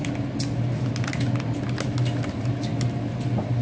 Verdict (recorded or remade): recorded